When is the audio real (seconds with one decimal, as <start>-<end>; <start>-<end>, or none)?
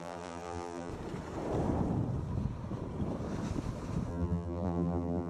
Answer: 0.9-4.1